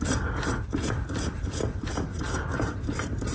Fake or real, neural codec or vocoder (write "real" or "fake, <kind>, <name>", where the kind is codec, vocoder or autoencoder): real